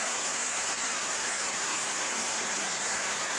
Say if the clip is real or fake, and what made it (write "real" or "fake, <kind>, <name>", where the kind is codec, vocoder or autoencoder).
fake, codec, SNAC